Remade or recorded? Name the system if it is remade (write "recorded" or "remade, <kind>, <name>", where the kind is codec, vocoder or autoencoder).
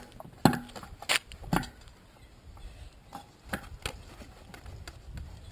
recorded